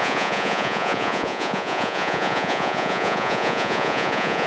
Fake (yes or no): yes